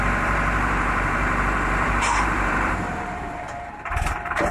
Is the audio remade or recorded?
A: remade